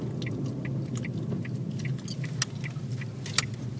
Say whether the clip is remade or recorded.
recorded